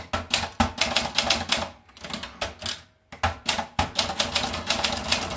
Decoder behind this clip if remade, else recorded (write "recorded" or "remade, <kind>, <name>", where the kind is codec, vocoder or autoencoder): recorded